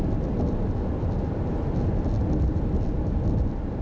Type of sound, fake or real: real